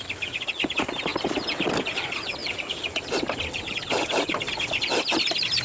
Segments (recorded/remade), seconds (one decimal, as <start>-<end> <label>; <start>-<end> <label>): 0.0-5.6 recorded